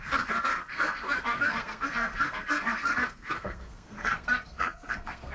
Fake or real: fake